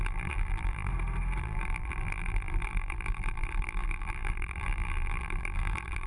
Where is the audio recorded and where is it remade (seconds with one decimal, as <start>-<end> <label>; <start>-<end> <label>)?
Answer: 0.0-0.9 remade; 0.9-1.4 recorded; 1.4-6.1 remade